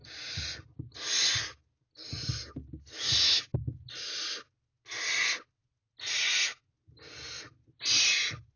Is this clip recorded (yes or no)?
yes